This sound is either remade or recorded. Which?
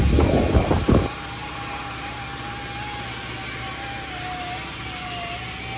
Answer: recorded